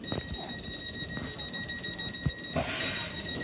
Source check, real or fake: real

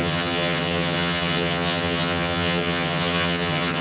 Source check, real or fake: fake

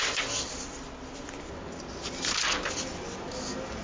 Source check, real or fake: real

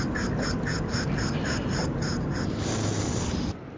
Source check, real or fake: real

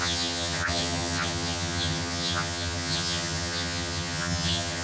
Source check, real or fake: fake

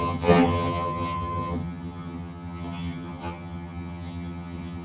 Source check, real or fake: fake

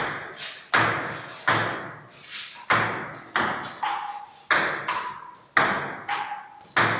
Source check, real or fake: real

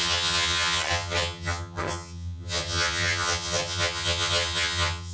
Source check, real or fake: fake